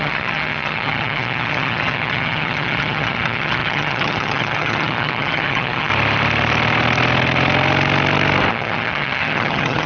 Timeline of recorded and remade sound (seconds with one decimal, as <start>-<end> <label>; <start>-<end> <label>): 0.0-5.9 remade; 5.9-8.5 recorded; 8.5-9.9 remade